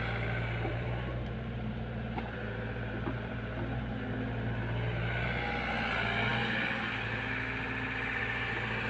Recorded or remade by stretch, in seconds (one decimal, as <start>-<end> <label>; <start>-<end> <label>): 0.0-0.7 recorded; 0.7-3.9 remade; 3.9-8.9 recorded